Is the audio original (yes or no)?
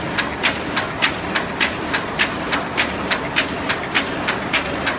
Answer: yes